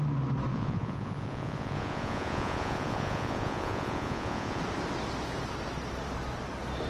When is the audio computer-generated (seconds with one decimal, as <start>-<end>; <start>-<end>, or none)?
0.5-4.6